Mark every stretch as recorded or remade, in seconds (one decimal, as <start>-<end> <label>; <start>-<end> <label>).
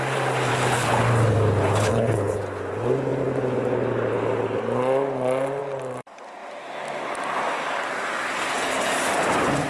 0.0-0.5 recorded; 0.5-1.0 remade; 1.0-1.9 recorded; 1.9-2.4 remade; 2.4-9.7 recorded